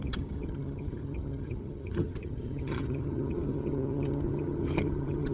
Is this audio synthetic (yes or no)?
yes